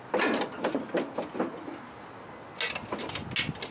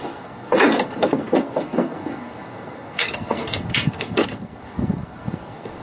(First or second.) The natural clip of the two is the first